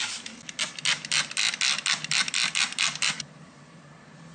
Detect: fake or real real